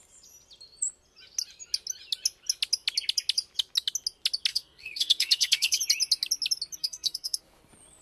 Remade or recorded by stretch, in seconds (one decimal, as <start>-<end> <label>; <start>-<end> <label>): 0.0-4.5 recorded; 4.5-5.8 remade; 5.8-6.8 recorded; 6.8-7.4 remade; 7.4-8.0 recorded

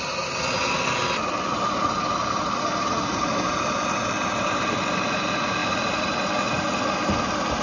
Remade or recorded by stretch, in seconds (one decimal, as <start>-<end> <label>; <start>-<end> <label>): 0.0-5.6 recorded; 5.6-6.4 remade; 6.4-7.6 recorded

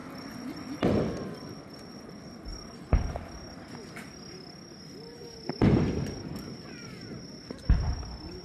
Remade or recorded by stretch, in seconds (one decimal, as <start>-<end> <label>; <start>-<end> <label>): 0.0-2.5 recorded; 2.5-5.6 remade; 5.6-8.4 recorded

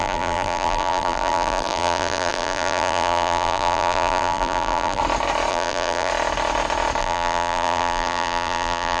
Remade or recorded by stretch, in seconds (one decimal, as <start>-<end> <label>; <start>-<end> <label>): 0.0-5.0 remade; 5.0-5.5 recorded; 5.5-6.1 remade; 6.1-7.0 recorded; 7.0-9.0 remade

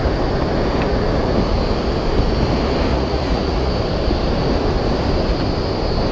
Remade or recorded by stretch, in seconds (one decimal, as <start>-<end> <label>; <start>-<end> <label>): 0.0-2.9 recorded; 2.9-3.7 remade; 3.7-6.1 recorded